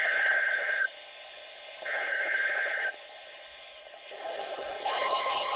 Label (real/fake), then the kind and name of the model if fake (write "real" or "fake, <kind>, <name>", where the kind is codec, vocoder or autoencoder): fake, codec, HILCodec